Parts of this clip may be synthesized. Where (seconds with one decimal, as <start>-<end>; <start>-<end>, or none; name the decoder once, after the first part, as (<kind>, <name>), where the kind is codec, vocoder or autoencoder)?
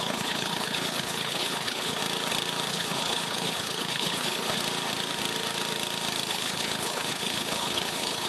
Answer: 0.0-2.0 (codec, HILCodec); 2.7-4.6; 6.3-8.3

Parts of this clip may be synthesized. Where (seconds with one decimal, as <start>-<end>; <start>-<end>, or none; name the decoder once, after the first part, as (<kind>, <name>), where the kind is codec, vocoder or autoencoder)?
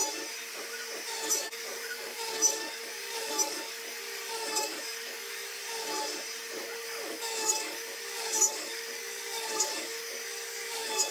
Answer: 1.3-5.6 (codec, DAC); 6.6-11.1